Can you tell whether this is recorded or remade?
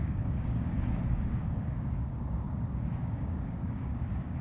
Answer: remade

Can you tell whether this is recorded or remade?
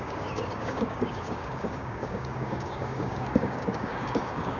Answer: remade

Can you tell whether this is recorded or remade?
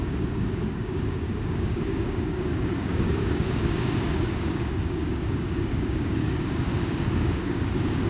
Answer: remade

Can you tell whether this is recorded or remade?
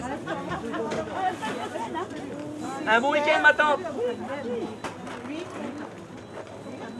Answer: recorded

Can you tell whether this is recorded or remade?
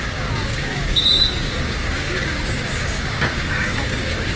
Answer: remade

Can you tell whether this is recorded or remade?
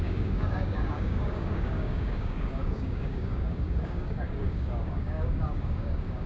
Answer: remade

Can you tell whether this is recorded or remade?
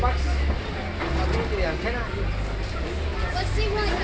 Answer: recorded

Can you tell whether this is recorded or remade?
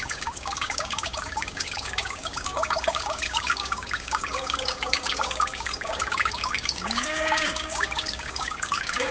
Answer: remade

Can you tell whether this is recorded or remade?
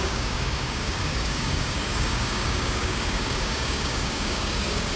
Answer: remade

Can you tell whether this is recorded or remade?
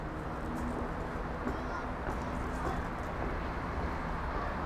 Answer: recorded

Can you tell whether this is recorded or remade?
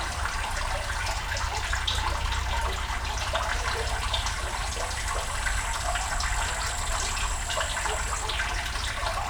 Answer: recorded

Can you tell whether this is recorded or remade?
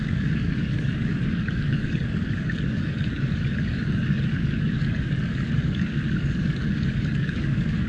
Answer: remade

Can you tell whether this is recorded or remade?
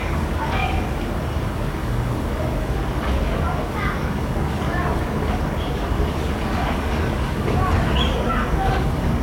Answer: remade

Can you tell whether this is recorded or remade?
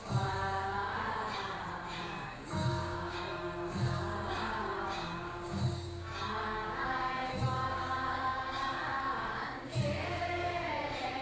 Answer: remade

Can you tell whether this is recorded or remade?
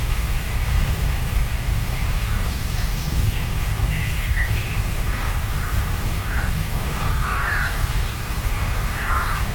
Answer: remade